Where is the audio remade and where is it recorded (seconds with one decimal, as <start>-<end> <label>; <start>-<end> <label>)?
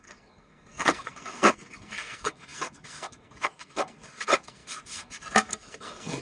0.0-6.2 remade